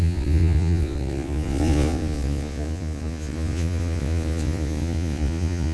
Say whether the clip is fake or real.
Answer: fake